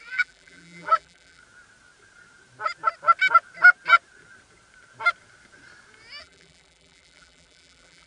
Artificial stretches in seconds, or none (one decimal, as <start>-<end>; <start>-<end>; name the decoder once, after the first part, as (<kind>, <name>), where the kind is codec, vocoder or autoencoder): 0.0-1.4 (vocoder, BigVGAN v2); 6.2-8.1